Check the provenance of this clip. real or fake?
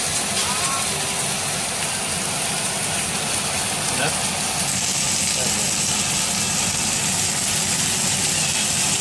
real